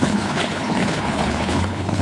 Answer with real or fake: fake